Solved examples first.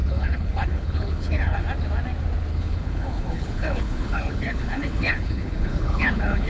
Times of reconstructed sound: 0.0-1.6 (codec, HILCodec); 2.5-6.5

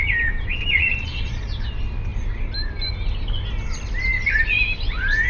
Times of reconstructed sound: 0.5-1.4 (vocoder, Vocos)

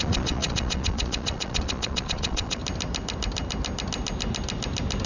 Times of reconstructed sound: 0.0-2.6 (vocoder, Vocos)